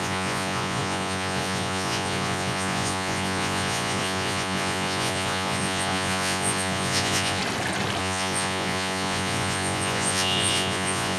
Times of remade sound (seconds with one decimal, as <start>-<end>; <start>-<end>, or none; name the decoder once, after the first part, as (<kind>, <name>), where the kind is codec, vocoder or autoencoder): 0.0-7.4 (vocoder, Vocos); 8.0-11.2